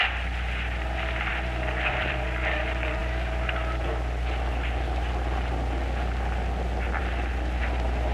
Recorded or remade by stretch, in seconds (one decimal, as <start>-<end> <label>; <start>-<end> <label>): 0.0-1.3 remade; 1.3-1.9 recorded; 1.9-3.0 remade; 3.0-7.0 recorded; 7.0-8.1 remade